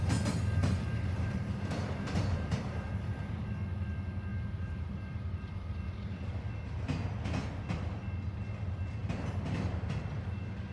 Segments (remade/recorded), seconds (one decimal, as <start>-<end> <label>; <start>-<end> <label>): 0.0-0.6 recorded; 0.6-3.4 remade; 3.4-4.3 recorded; 4.3-6.3 remade; 6.3-10.7 recorded